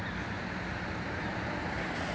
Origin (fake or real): real